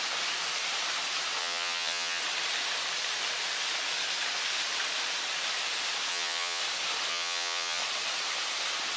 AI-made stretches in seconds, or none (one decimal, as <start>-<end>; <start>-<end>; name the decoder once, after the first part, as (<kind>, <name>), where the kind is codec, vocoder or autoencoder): 1.4-2.2 (vocoder, HiFi-GAN); 6.1-6.6; 7.1-7.8